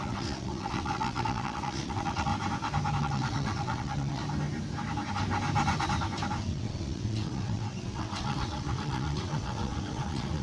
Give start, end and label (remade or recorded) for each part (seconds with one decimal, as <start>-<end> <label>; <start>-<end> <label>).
0.0-2.3 remade; 2.3-3.0 recorded; 3.0-4.2 remade; 4.2-6.4 recorded; 6.4-10.4 remade